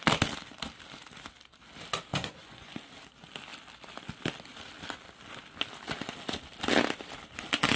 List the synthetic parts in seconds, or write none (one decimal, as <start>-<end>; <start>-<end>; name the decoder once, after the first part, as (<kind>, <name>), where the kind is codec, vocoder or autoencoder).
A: 2.1-2.7 (vocoder, Vocos)